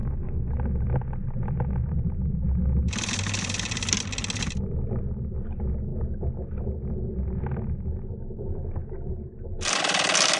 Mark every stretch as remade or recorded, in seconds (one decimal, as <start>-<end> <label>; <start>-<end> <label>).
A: 0.0-0.5 remade; 0.5-10.4 recorded